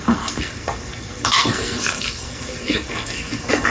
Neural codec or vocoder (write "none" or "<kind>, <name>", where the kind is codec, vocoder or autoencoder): codec, SNAC